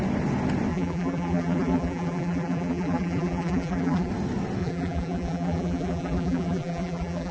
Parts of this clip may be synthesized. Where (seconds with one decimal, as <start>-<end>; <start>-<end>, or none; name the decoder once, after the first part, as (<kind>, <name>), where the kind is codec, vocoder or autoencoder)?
0.7-4.1 (vocoder, BigVGAN v2); 4.6-7.3